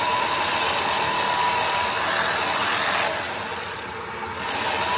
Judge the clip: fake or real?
real